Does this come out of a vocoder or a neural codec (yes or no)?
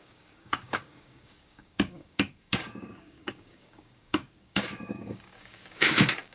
yes